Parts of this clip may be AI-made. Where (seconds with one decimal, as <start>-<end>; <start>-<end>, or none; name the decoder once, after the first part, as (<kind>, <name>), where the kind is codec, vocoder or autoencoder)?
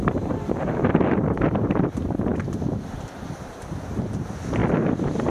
0.0-5.3 (vocoder, BigVGAN v2)